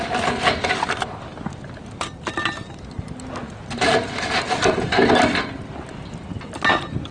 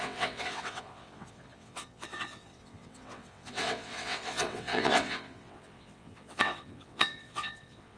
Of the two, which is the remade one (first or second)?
second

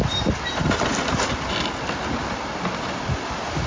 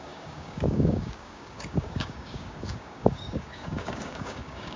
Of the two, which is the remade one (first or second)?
second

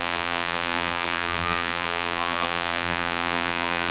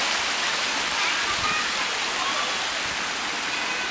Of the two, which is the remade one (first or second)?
first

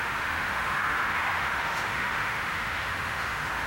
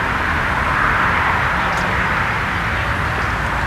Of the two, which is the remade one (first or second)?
first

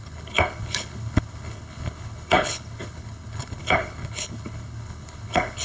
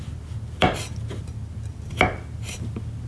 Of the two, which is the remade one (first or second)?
first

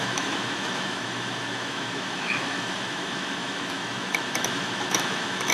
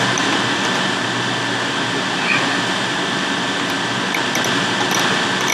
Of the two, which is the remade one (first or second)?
first